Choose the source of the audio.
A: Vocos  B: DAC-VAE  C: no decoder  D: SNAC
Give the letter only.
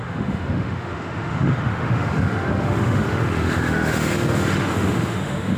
B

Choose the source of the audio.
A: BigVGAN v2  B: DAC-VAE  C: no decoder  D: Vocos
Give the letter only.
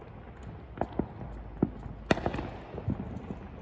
C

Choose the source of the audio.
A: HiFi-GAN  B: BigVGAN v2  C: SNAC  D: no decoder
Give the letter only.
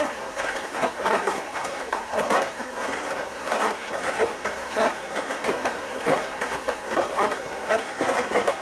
C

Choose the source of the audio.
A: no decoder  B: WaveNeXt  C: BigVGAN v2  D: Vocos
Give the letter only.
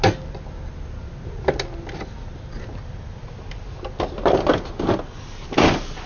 A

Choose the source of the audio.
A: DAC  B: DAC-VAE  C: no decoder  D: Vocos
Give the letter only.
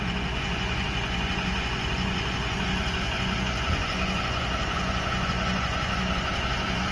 D